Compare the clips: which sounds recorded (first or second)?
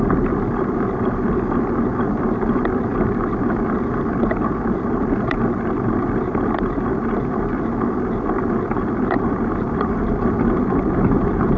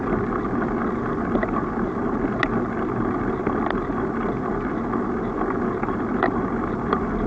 second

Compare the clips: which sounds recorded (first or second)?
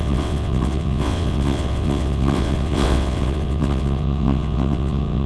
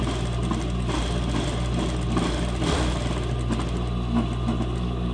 second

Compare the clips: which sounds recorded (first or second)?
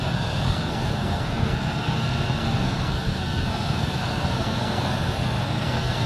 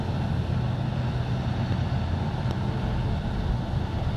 second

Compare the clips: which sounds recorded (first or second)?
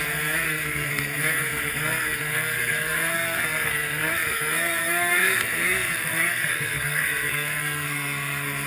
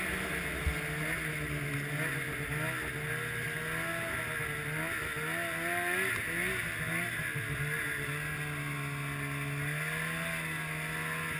second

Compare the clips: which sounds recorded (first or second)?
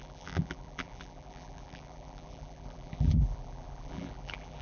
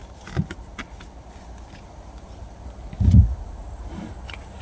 second